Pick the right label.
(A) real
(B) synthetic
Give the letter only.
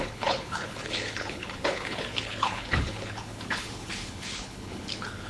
B